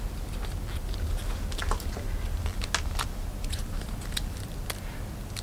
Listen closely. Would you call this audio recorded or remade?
recorded